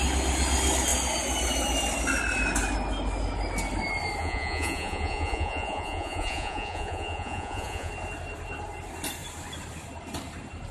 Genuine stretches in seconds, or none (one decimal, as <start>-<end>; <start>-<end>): 0.0-4.2; 7.9-10.7